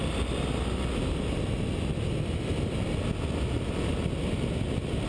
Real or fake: real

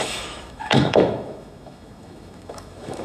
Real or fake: fake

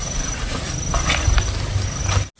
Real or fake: real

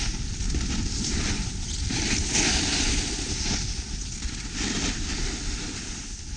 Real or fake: real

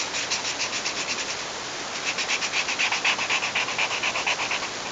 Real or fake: real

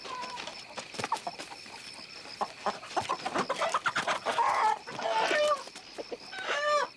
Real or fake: real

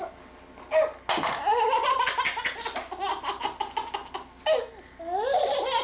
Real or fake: real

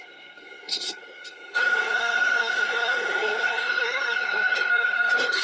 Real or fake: fake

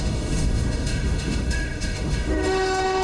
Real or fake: fake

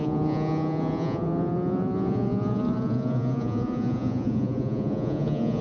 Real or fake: fake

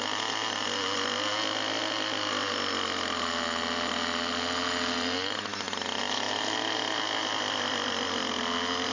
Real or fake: real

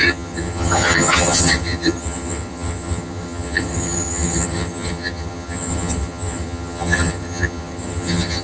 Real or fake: fake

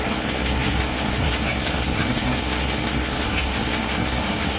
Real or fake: fake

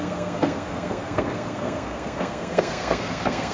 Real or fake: fake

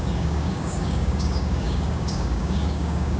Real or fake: fake